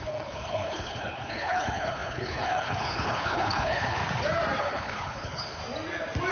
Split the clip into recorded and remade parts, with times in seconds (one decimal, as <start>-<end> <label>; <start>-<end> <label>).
0.0-4.0 remade; 4.0-4.6 recorded; 4.6-5.6 remade; 5.6-6.3 recorded